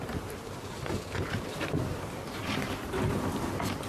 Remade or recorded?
recorded